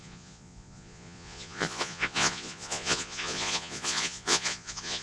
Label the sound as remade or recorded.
remade